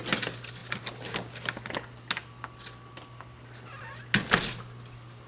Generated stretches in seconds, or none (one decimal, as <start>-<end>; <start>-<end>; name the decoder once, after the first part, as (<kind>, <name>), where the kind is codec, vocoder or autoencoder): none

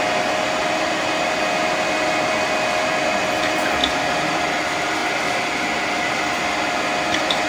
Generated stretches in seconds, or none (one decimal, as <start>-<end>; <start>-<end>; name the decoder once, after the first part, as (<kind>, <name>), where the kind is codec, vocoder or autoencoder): 0.6-3.2 (vocoder, BigVGAN v2)

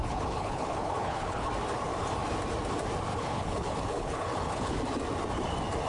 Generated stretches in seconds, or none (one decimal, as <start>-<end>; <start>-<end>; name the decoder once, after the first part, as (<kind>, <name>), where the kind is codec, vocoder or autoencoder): 0.0-1.5 (codec, HILCodec); 3.1-4.8